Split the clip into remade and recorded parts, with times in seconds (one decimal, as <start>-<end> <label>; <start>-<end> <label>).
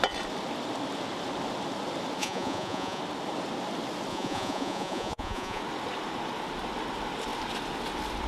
0.0-2.2 recorded; 2.2-3.0 remade; 3.0-4.1 recorded; 4.1-5.6 remade; 5.6-8.3 recorded